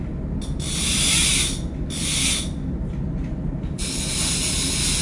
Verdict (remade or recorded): recorded